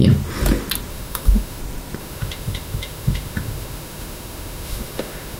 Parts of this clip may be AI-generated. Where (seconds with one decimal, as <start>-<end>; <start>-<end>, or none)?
0.9-1.6; 2.0-5.4